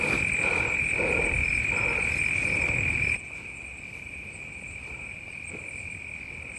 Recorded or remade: recorded